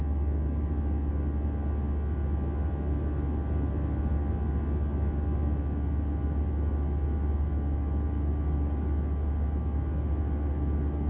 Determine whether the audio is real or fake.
real